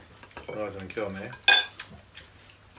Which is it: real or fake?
real